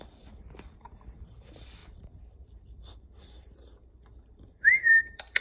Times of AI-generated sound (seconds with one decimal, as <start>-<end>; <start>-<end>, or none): 0.0-5.4